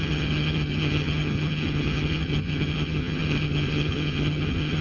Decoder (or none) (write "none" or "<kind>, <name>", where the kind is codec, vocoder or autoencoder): vocoder, HiFi-GAN